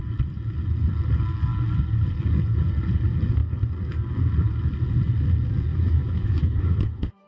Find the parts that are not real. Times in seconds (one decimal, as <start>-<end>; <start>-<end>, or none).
5.7-7.3